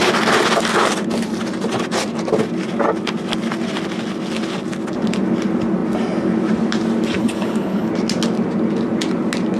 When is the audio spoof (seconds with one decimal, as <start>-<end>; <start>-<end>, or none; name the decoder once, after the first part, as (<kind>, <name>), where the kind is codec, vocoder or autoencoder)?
7.2-7.9 (codec, HILCodec)